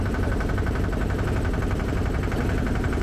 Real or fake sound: real